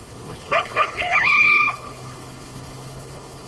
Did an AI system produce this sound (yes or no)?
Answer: yes